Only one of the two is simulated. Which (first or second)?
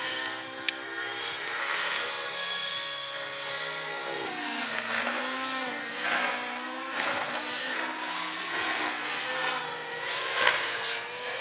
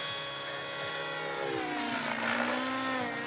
first